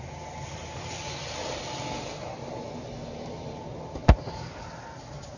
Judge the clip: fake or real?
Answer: real